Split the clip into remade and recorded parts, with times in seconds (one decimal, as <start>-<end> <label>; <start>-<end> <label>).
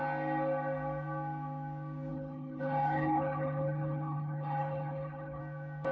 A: 0.0-2.1 recorded; 2.1-5.4 remade; 5.4-5.9 recorded